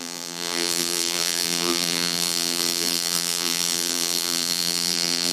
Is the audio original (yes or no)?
no